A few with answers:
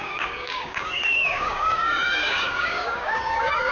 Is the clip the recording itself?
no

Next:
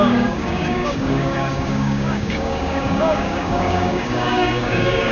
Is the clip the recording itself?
no